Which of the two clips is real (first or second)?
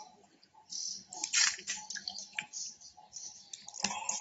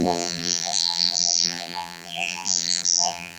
first